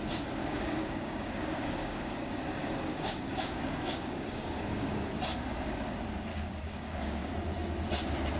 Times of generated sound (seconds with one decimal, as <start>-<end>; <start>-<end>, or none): 0.4-2.3; 2.9-5.1; 6.3-7.3